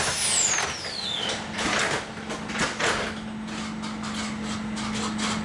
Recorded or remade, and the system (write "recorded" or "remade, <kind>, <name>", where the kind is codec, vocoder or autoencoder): recorded